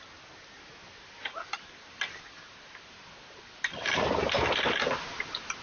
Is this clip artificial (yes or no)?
no